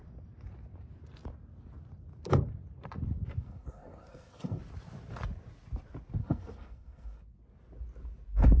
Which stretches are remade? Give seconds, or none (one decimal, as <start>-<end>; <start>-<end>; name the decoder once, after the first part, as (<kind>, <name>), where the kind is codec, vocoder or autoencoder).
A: 3.3-4.6 (codec, SNAC); 6.2-7.2